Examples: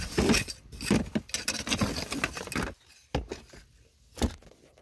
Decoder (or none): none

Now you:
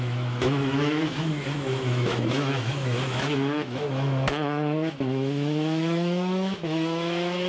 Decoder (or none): autoencoder, DAC-VAE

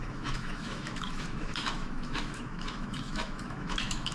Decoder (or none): autoencoder, DAC-VAE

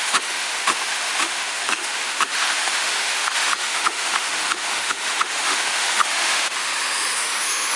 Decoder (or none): autoencoder, DAC-VAE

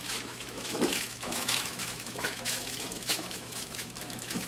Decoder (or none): autoencoder, DAC-VAE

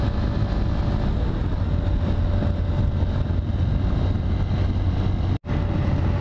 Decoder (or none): none